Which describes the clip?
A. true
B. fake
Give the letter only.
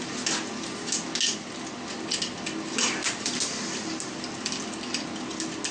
A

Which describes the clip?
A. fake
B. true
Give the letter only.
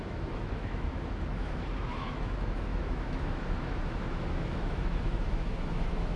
A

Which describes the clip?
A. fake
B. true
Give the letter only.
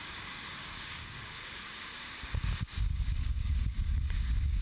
A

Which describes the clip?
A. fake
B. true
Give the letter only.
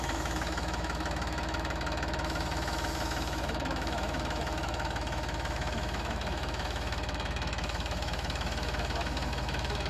A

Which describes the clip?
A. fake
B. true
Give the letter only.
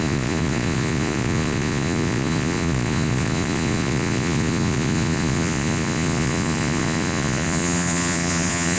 A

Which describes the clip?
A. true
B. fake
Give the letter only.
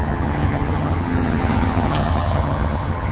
B